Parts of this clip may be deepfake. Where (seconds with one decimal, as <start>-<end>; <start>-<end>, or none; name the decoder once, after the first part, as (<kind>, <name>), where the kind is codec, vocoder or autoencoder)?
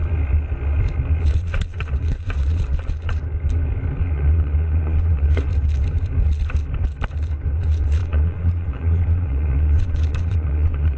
1.2-3.2 (vocoder, Vocos); 4.0-5.5; 7.6-11.0